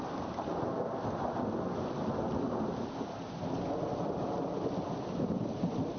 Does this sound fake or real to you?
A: real